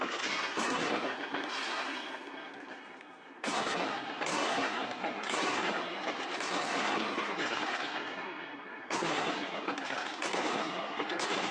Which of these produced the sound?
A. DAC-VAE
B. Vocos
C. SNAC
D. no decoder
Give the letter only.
C